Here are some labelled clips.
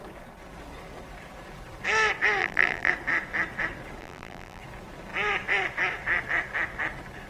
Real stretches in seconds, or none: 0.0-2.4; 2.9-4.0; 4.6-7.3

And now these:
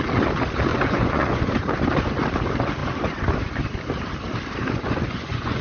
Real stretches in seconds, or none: 0.0-0.7; 1.5-4.6

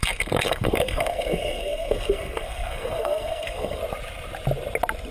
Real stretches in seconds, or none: 3.8-5.1

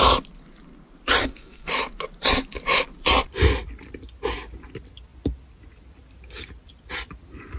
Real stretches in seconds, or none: 0.0-1.2; 1.7-7.6

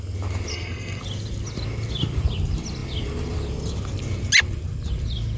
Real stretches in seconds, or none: 0.0-0.5; 1.0-5.4

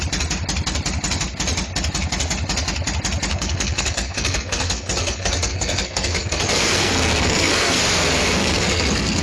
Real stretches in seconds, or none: 0.0-3.3; 7.8-8.4